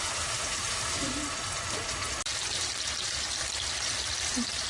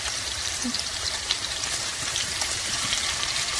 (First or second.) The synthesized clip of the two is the second